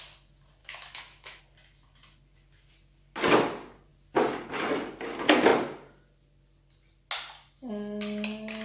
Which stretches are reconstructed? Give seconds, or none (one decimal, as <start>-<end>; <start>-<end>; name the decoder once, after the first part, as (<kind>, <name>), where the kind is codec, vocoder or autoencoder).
0.6-1.4 (autoencoder, DAC-VAE)